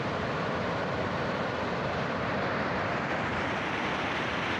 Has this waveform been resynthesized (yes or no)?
yes